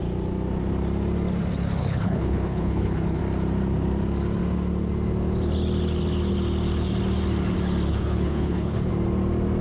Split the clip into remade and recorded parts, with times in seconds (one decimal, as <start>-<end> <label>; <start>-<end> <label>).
0.0-1.8 recorded; 1.8-3.2 remade; 3.2-7.9 recorded; 7.9-8.9 remade; 8.9-9.6 recorded